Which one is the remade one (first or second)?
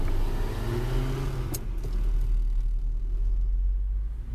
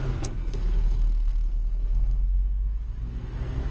second